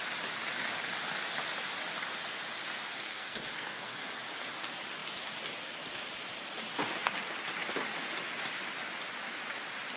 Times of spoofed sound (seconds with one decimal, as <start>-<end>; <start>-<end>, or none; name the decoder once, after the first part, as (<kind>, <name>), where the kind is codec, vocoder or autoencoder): 2.9-4.1 (codec, SNAC)